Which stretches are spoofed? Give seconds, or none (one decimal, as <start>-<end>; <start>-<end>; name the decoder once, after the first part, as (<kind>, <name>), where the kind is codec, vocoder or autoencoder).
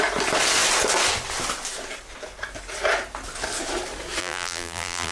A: 4.2-5.1 (vocoder, BigVGAN v2)